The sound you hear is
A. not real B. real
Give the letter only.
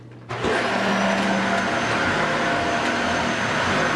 B